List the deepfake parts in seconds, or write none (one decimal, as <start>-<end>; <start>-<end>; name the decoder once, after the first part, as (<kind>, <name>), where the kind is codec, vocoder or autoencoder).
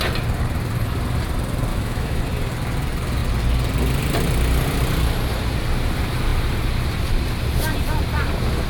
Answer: 1.7-2.2 (autoencoder, DAC-VAE)